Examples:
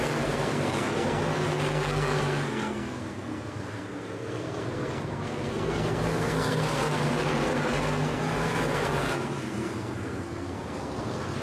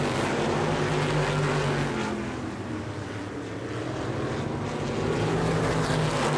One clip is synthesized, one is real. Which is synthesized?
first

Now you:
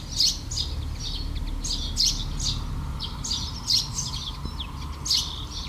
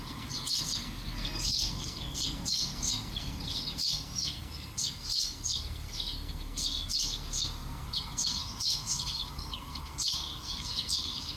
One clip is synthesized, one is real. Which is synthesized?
second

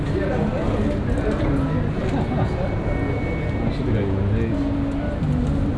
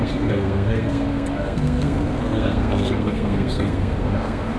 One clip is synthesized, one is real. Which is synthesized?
second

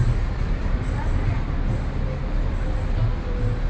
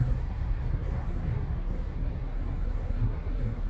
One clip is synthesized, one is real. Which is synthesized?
second